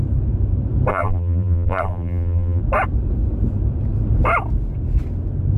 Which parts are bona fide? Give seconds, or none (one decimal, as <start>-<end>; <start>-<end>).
0.0-0.9; 2.6-5.6